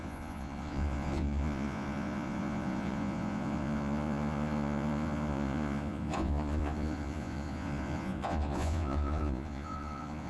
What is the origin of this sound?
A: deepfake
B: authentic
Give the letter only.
A